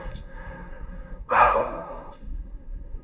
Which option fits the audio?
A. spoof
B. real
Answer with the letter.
A